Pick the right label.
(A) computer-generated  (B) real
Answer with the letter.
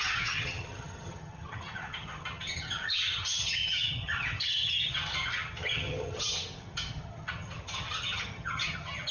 A